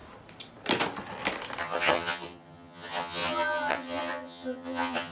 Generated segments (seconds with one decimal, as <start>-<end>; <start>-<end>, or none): 1.6-5.1